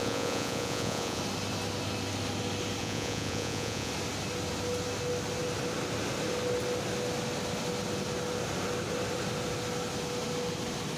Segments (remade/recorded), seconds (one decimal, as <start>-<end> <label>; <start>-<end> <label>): 0.0-1.2 remade; 1.2-2.8 recorded; 2.8-3.9 remade; 3.9-11.0 recorded